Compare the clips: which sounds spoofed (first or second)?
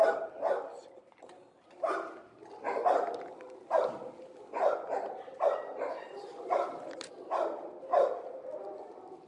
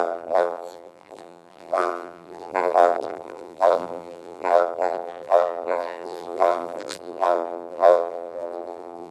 second